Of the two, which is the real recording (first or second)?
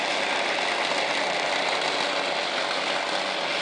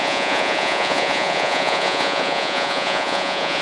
first